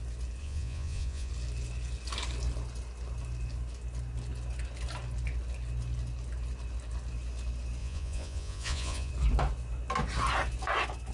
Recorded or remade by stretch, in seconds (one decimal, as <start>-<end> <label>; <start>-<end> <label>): 0.0-0.4 recorded; 0.4-1.3 remade; 1.3-7.8 recorded; 7.8-9.1 remade; 9.1-11.1 recorded